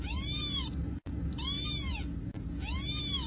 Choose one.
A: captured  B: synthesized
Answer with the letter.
A